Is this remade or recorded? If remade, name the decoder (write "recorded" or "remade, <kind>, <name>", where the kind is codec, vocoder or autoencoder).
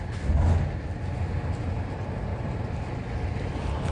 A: recorded